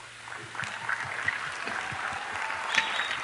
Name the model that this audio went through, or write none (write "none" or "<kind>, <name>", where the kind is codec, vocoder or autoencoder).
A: none